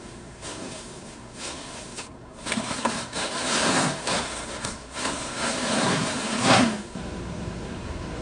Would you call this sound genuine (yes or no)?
no